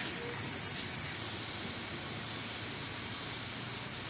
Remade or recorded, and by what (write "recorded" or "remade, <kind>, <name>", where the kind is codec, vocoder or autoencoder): recorded